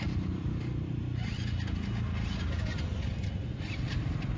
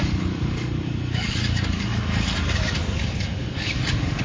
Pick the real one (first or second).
first